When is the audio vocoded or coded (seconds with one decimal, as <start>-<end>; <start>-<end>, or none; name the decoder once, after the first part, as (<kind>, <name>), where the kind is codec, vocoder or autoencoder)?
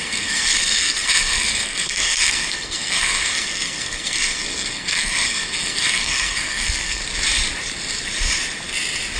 0.0-7.0 (codec, SNAC)